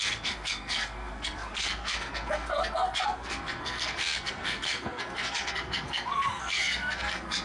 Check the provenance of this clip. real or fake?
fake